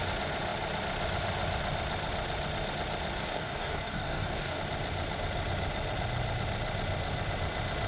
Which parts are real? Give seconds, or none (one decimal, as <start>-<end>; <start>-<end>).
0.0-3.2; 4.6-7.9